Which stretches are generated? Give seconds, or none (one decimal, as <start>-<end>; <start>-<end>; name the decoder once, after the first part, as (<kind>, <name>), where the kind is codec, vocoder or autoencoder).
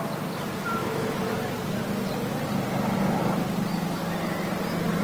0.8-1.3 (autoencoder, DAC-VAE)